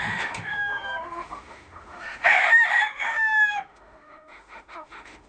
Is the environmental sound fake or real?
fake